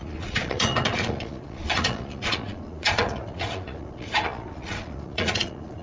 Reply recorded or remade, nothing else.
remade